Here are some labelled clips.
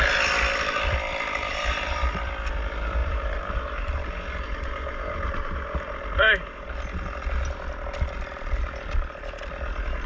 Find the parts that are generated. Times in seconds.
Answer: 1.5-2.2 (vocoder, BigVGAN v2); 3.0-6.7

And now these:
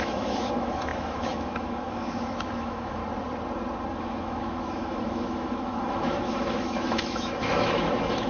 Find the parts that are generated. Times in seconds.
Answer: 0.0-3.0 (autoencoder, DAC-VAE); 4.0-8.3

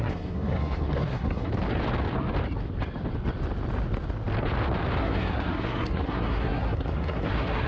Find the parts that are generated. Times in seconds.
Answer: 0.0-1.5 (codec, SNAC); 5.0-7.7

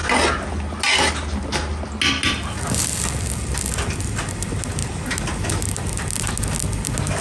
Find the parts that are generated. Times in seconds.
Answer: none

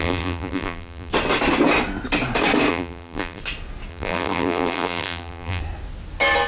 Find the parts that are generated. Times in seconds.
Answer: 0.0-1.1 (vocoder, BigVGAN v2); 2.7-3.4; 3.9-5.6

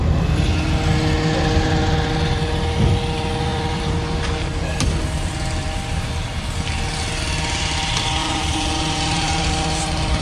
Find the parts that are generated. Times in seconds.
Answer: 8.2-9.5 (vocoder, BigVGAN v2)

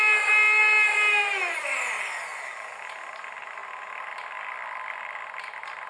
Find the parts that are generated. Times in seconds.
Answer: none

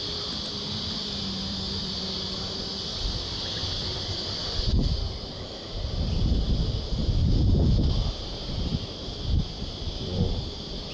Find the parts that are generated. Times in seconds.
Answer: 0.0-2.7 (vocoder, BigVGAN v2); 3.4-10.9